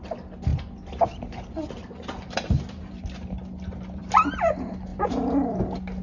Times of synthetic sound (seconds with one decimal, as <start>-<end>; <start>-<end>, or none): 1.8-2.9; 4.9-5.6